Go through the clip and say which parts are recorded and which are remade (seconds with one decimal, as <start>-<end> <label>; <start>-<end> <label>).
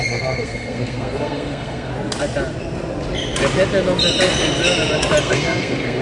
0.0-1.9 remade; 1.9-5.2 recorded; 5.2-6.0 remade